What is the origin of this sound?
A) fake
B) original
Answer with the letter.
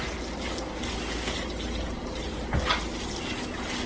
B